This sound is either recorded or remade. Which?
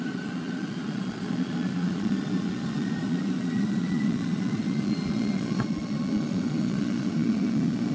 remade